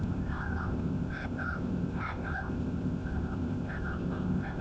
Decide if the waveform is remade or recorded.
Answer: remade